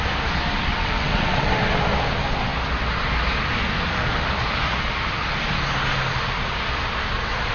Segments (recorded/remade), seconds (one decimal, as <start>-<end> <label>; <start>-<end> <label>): 0.0-0.7 recorded; 0.7-1.5 remade; 1.5-7.5 recorded

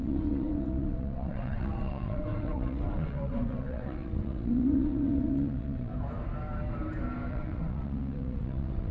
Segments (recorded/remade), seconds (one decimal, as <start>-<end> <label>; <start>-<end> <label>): 0.0-5.9 remade; 5.9-7.3 recorded; 7.3-8.9 remade

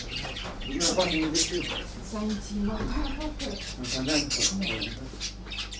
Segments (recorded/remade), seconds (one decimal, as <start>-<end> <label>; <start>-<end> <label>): 0.0-5.8 recorded

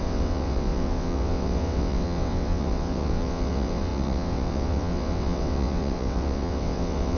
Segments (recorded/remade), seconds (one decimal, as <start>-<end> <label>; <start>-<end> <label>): 0.0-7.2 remade

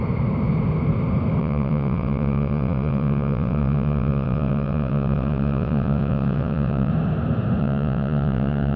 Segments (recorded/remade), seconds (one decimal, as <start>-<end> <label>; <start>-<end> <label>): 0.0-1.4 recorded; 1.4-6.9 remade; 6.9-7.6 recorded; 7.6-8.8 remade

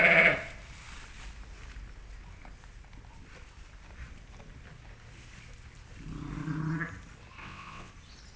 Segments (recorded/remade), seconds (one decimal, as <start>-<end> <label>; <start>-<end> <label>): 0.0-7.4 recorded; 7.4-7.9 remade; 7.9-8.4 recorded